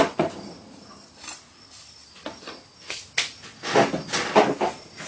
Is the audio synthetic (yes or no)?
no